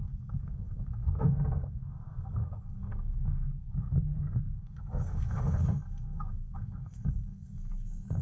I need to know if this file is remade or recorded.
remade